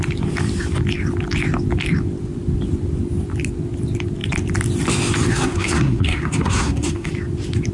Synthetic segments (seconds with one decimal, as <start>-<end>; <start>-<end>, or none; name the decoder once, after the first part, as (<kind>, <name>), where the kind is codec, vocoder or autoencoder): 5.3-7.1 (codec, SNAC)